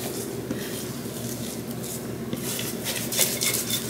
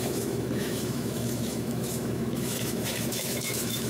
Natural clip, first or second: first